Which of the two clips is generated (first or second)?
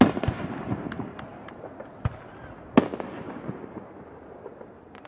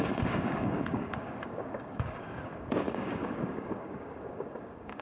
second